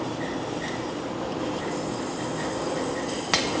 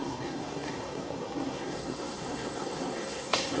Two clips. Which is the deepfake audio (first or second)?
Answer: second